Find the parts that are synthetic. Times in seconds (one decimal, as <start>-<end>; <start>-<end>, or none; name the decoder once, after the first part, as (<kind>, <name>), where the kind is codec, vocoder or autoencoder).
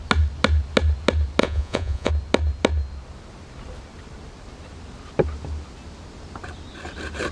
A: 1.4-2.1 (vocoder, Vocos)